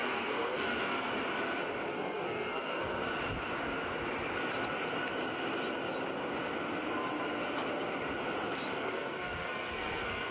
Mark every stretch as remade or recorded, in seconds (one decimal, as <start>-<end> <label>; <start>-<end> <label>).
0.0-1.1 remade; 1.1-1.9 recorded; 1.9-3.1 remade; 3.1-8.8 recorded; 8.8-10.3 remade